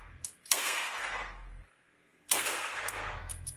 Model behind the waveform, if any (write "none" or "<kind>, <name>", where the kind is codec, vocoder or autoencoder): codec, SNAC